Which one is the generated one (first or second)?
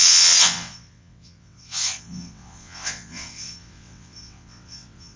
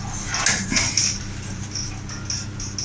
first